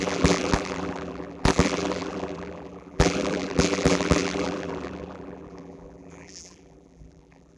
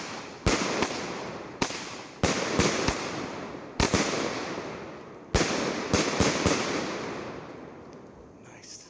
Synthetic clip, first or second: first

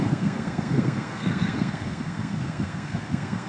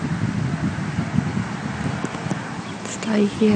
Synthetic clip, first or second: first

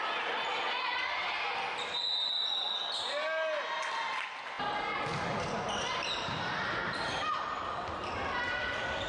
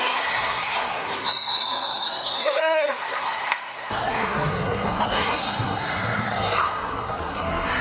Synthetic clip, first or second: second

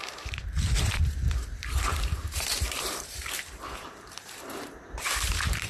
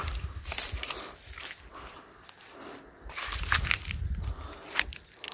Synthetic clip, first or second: first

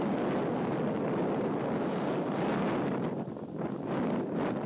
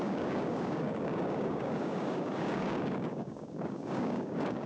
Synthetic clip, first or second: second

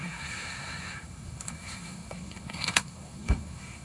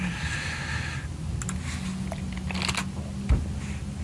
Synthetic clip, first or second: first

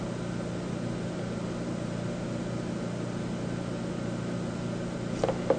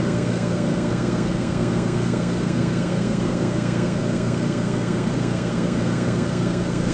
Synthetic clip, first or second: second